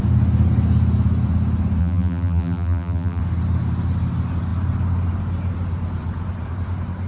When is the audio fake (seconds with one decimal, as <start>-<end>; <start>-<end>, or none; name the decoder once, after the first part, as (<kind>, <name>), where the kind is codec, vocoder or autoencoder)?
1.8-3.2 (vocoder, BigVGAN v2)